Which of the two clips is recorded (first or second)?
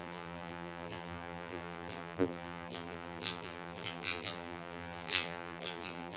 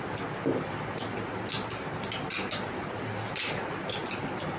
second